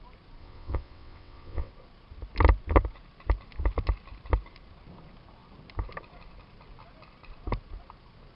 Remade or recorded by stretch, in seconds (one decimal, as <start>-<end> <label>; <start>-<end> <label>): 0.0-0.4 recorded; 0.4-1.7 remade; 1.7-8.3 recorded